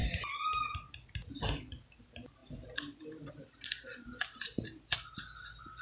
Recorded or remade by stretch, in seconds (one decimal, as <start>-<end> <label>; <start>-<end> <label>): 0.0-5.8 recorded